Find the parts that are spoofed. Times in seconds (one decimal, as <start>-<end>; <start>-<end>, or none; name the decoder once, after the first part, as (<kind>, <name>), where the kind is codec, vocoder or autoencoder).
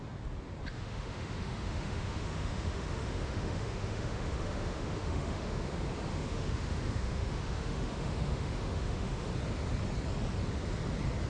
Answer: 0.7-5.6 (autoencoder, DAC-VAE); 6.1-9.3